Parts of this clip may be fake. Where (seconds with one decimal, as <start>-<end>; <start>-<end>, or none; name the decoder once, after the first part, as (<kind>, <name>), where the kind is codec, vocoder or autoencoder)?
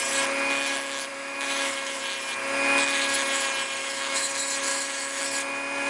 1.1-2.0 (autoencoder, DAC-VAE); 3.8-4.3; 4.7-5.2